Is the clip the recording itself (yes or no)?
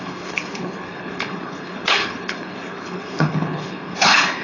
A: no